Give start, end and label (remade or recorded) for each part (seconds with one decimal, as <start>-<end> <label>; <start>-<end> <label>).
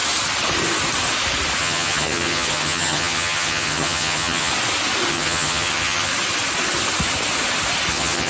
0.0-1.6 recorded; 1.6-4.5 remade; 4.5-5.1 recorded; 5.1-6.1 remade; 6.1-7.9 recorded; 7.9-8.3 remade